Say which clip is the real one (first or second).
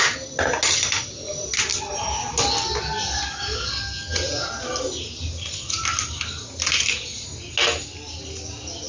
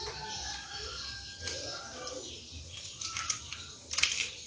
first